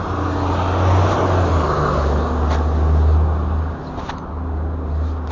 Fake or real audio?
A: real